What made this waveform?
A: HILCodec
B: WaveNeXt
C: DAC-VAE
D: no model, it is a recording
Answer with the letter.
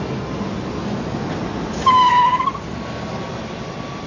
D